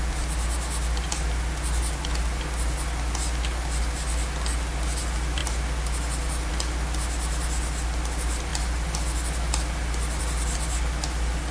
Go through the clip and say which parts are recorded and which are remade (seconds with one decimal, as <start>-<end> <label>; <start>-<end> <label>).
0.0-11.5 recorded